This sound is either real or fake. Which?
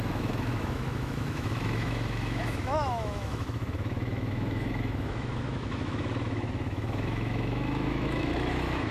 fake